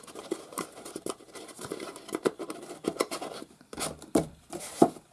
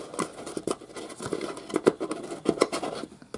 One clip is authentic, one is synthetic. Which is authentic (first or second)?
second